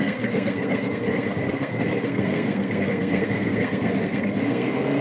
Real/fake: fake